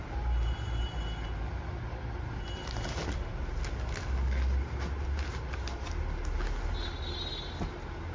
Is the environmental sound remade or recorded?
recorded